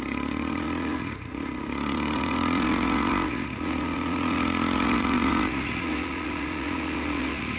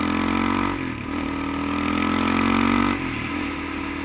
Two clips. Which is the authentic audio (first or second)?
second